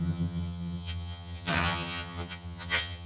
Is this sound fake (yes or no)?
yes